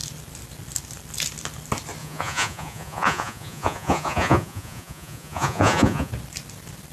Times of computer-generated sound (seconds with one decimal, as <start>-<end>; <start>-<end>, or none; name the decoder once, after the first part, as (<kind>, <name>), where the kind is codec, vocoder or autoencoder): 2.0-6.1 (vocoder, Vocos)